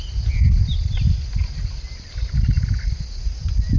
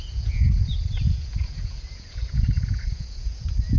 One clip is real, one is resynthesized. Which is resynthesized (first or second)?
second